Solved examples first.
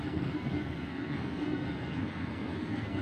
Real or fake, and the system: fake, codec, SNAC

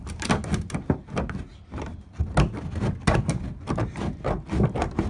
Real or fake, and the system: real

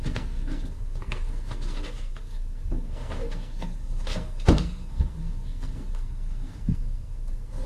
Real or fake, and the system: fake, codec, SNAC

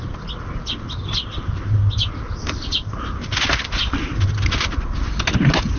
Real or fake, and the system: real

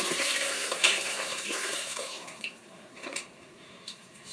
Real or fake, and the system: fake, codec, SNAC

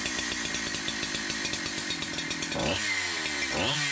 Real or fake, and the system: real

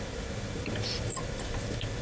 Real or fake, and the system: real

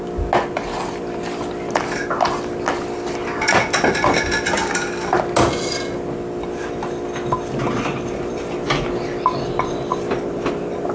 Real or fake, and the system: real